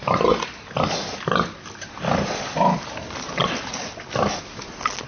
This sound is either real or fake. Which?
real